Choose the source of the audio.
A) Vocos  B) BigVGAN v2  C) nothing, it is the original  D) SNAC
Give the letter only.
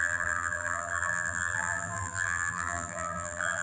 B